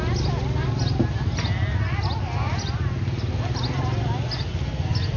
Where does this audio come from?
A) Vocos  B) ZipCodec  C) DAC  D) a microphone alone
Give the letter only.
D